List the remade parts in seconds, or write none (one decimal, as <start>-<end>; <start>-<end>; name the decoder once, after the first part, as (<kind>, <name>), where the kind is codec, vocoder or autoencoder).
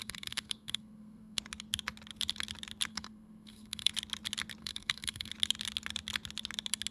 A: 0.0-1.4 (codec, SNAC); 2.9-3.9; 4.6-5.3